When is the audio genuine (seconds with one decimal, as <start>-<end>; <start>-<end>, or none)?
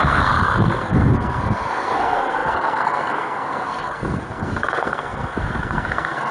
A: none